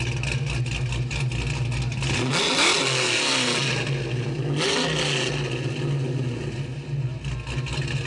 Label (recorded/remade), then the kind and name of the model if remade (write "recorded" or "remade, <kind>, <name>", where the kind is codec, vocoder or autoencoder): recorded